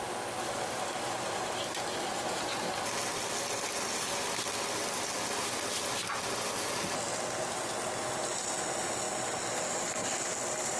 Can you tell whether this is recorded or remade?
recorded